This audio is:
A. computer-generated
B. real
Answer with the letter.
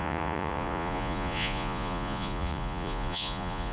A